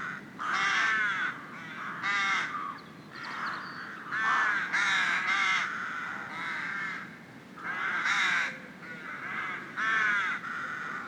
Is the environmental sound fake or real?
real